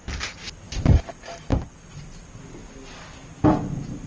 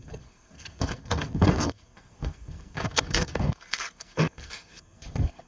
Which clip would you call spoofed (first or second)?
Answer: second